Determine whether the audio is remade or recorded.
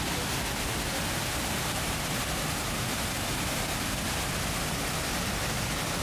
recorded